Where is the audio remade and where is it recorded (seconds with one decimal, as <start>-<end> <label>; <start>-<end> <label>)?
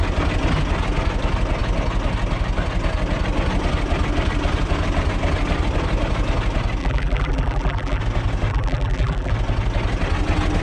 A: 0.0-6.8 recorded; 6.8-8.0 remade; 8.0-8.5 recorded; 8.5-9.3 remade; 9.3-10.6 recorded